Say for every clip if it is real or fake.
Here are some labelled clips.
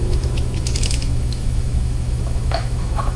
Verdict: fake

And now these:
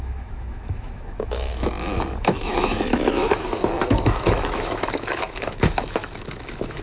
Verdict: fake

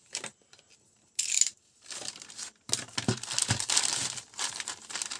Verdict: real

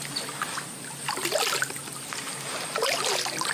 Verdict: real